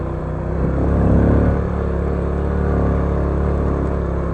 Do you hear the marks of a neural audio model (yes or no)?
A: no